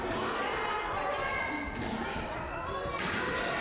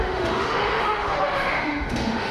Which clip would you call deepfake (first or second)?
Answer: second